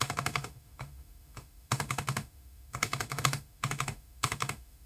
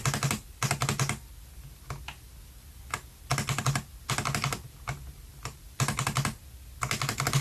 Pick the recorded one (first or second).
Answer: second